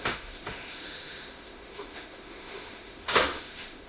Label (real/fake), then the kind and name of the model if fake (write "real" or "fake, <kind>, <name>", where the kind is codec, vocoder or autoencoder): fake, autoencoder, DAC-VAE